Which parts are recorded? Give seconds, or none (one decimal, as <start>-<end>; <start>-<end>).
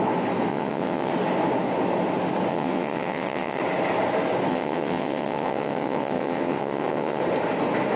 0.0-0.5; 1.1-2.5; 3.6-4.5; 7.2-8.0